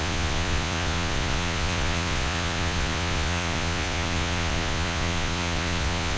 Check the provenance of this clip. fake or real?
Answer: fake